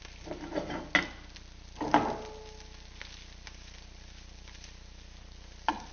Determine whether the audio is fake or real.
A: real